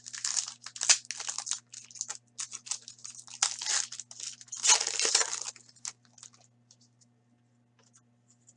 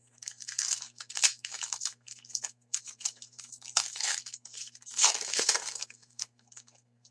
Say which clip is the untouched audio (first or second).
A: first